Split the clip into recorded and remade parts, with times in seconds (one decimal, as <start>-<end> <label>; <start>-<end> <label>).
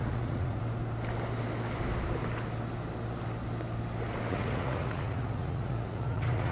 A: 0.0-0.6 remade; 0.6-4.3 recorded; 4.3-6.5 remade